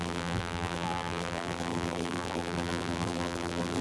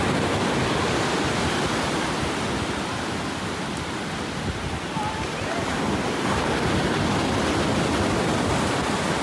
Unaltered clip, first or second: second